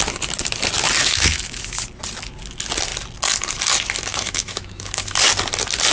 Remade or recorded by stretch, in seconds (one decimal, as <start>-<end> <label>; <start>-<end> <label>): 0.0-1.0 recorded; 1.0-1.6 remade; 1.6-4.1 recorded; 4.1-5.0 remade; 5.0-5.9 recorded